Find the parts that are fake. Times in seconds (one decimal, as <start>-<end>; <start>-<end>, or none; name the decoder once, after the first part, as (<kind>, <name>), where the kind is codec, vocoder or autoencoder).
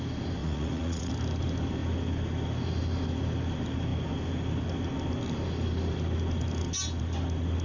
0.4-1.1 (vocoder, Vocos)